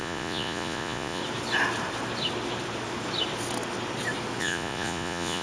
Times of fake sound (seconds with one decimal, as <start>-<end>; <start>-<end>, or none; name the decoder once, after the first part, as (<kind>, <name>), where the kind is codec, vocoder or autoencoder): 0.0-1.2 (vocoder, Vocos); 4.4-5.4